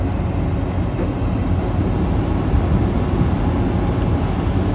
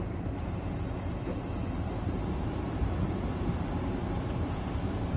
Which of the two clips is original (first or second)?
first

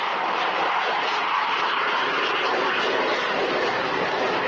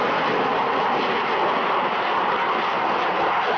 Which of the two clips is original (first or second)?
second